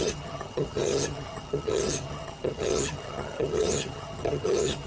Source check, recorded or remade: remade